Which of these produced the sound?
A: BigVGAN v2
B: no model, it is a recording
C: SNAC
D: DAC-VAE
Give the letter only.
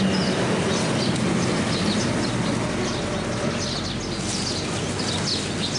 B